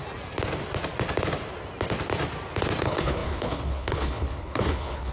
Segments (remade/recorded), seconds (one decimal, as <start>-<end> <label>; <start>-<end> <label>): 0.0-2.8 recorded; 2.8-5.1 remade